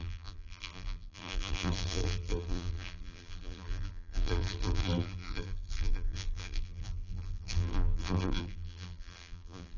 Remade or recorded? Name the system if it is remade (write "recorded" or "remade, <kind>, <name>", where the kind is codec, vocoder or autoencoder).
remade, vocoder, BigVGAN v2